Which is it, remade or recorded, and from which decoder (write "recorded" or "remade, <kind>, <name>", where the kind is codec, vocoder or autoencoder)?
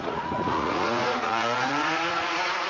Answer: remade, vocoder, Vocos